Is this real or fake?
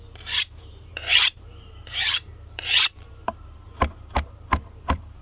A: fake